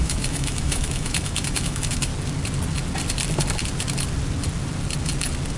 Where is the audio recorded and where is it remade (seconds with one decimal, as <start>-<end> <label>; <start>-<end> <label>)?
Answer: 0.0-2.1 remade; 2.1-5.6 recorded